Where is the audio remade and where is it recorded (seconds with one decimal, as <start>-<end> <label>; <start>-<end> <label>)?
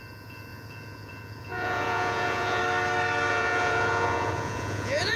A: 0.0-2.6 remade; 2.6-3.3 recorded; 3.3-5.2 remade